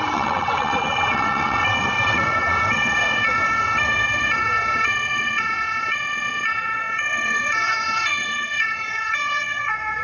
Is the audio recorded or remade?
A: remade